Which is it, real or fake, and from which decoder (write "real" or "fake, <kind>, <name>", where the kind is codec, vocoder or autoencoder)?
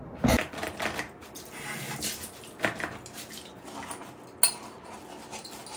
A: real